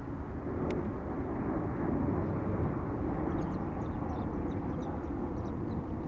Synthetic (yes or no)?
no